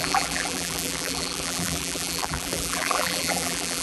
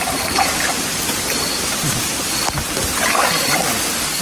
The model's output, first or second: first